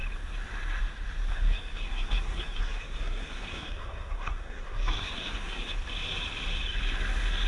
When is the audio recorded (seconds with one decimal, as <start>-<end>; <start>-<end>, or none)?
0.0-1.3; 5.7-7.5